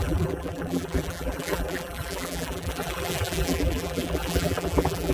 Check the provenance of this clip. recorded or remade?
remade